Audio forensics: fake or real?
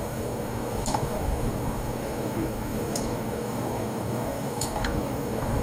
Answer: fake